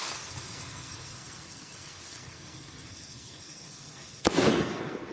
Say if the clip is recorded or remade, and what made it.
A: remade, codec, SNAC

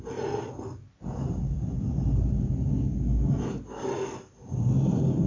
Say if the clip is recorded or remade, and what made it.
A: recorded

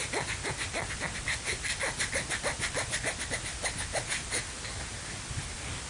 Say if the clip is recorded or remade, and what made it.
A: recorded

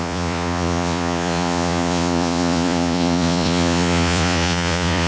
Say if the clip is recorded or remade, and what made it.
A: remade, vocoder, Vocos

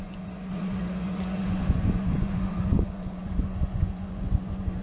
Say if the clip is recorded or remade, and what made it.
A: remade, vocoder, Vocos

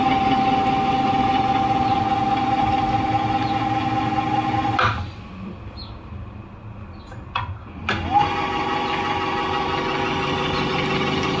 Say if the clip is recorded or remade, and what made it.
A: recorded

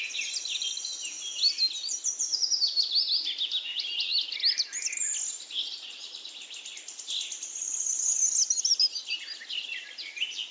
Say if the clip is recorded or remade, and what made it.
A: recorded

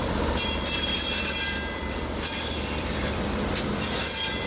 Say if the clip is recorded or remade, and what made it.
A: remade, vocoder, BigVGAN v2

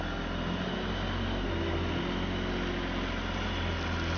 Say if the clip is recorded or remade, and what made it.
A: recorded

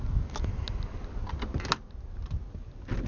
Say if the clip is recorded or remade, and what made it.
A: recorded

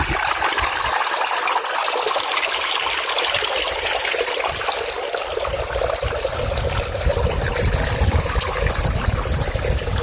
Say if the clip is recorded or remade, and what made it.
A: recorded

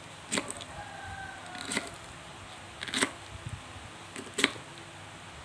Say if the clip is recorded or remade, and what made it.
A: recorded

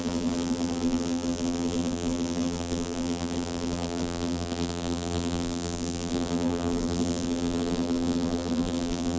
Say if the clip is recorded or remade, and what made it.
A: remade, vocoder, BigVGAN v2